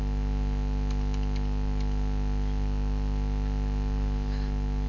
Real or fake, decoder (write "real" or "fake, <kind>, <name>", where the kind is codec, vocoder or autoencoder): real